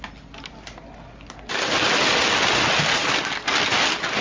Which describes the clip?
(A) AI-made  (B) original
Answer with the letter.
B